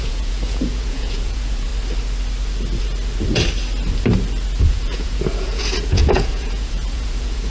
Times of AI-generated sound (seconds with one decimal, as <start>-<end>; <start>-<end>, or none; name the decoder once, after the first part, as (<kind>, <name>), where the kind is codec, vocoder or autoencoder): 0.0-1.7 (vocoder, Vocos); 4.6-7.5